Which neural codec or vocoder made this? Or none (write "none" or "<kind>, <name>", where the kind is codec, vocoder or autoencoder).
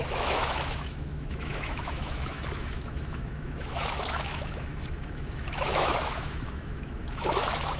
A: autoencoder, DAC-VAE